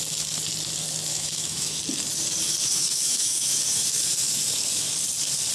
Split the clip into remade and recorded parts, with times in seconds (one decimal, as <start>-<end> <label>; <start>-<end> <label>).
0.0-1.1 recorded; 1.1-1.8 remade; 1.8-2.6 recorded; 2.6-4.9 remade; 4.9-5.5 recorded